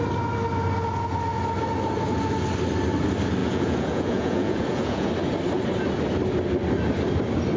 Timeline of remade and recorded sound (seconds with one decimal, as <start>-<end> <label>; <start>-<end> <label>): 0.0-3.4 recorded; 3.4-5.1 remade; 5.1-7.6 recorded